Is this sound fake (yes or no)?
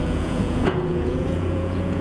yes